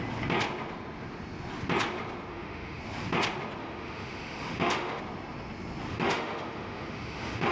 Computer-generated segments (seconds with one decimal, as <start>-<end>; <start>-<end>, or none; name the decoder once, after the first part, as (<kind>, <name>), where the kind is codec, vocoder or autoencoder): 2.3-2.8 (autoencoder, DAC-VAE); 3.6-5.0; 5.9-7.5